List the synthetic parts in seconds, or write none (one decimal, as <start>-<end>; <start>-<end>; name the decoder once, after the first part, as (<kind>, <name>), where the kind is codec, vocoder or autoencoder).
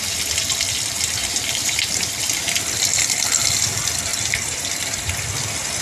1.2-2.4 (vocoder, BigVGAN v2); 4.1-5.0